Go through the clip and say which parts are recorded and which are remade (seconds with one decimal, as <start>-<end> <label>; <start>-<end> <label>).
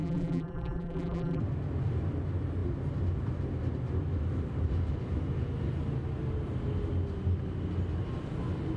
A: 0.0-1.4 remade; 1.4-8.8 recorded